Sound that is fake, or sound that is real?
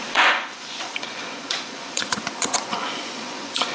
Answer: fake